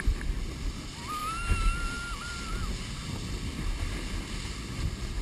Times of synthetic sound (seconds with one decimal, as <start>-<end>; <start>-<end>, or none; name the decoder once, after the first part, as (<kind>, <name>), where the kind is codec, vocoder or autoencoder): 0.0-1.2 (vocoder, BigVGAN v2); 4.3-5.2